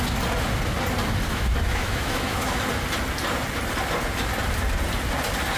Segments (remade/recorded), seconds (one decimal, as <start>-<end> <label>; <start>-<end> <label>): 0.0-1.3 recorded; 1.3-2.6 remade; 2.6-5.6 recorded